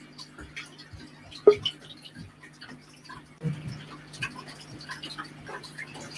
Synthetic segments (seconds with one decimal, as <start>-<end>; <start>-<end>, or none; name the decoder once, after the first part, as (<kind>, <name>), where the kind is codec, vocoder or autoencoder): none